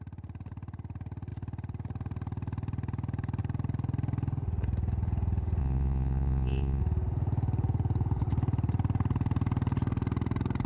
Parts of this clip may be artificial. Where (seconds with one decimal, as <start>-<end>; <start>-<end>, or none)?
5.6-6.8